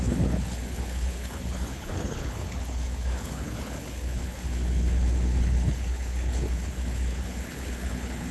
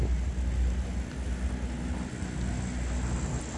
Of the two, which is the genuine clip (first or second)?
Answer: second